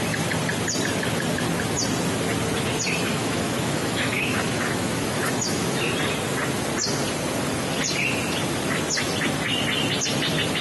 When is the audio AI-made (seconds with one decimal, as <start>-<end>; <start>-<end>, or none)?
3.1-5.9